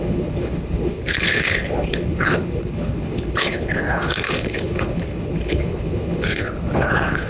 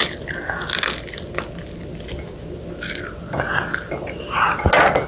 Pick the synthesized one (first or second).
first